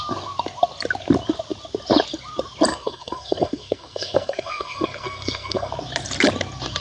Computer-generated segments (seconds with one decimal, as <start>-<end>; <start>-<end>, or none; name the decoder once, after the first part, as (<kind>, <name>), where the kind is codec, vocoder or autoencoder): 2.7-5.7 (codec, SNAC)